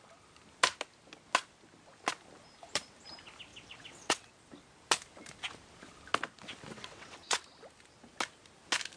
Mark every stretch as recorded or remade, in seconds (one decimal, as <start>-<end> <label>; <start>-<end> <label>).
0.0-3.5 recorded; 3.5-4.4 remade; 4.4-6.7 recorded; 6.7-7.4 remade; 7.4-9.0 recorded